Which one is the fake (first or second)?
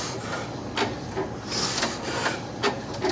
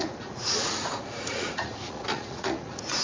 second